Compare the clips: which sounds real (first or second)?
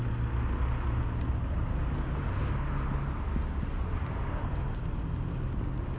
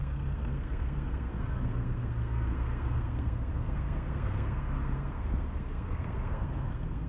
first